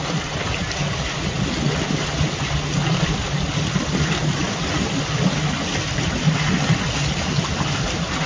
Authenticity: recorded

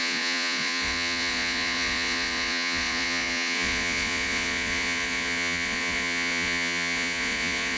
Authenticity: remade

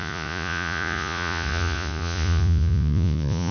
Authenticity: remade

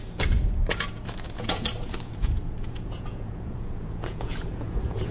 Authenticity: remade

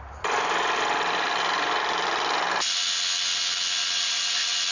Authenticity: recorded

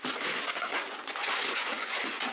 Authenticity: remade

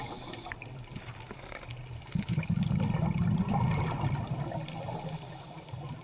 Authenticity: recorded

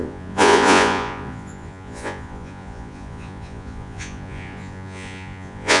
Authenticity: remade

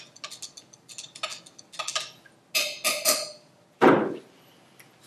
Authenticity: recorded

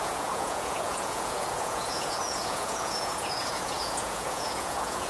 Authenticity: remade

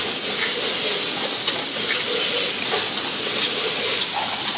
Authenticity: recorded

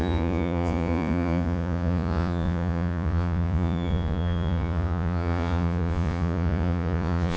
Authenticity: remade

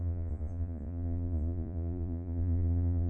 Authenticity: remade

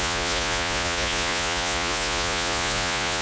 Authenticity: remade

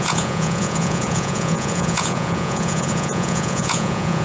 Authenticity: remade